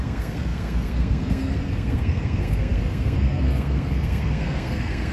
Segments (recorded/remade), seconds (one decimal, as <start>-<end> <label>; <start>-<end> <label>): 0.0-5.1 remade